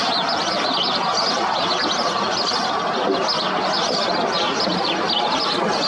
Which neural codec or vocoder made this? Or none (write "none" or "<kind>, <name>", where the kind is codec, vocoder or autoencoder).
none